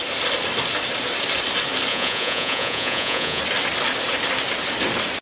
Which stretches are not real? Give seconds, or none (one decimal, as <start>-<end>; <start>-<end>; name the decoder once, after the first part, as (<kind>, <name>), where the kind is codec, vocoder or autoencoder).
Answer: 1.9-3.4 (vocoder, Vocos)